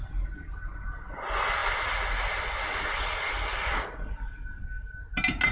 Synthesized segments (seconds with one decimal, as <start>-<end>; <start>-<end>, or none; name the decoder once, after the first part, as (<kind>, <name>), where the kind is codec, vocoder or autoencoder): none